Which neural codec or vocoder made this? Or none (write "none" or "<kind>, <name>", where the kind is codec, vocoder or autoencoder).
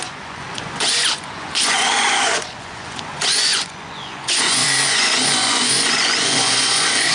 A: vocoder, Vocos